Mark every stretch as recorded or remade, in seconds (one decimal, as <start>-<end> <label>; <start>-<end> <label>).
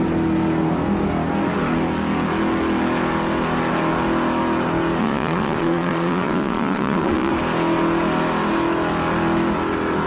0.0-5.0 recorded; 5.0-7.3 remade; 7.3-10.1 recorded